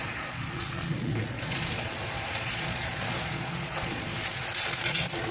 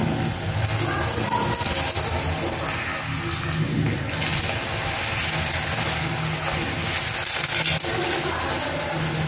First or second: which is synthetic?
first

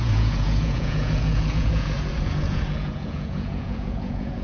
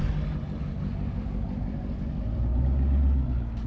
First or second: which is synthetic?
first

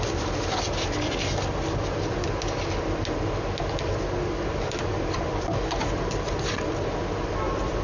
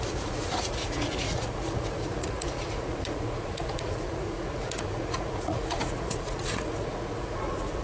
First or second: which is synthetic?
second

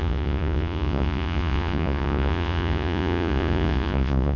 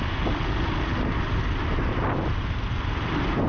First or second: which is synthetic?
first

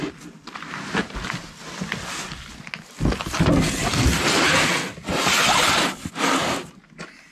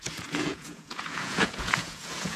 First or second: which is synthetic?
second